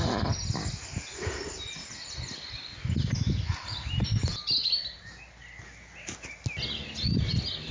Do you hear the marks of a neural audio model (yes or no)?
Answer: no